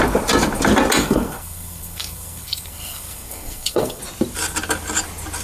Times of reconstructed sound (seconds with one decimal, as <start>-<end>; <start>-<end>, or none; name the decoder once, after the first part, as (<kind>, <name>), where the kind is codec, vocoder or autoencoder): 1.0-4.0 (codec, SNAC)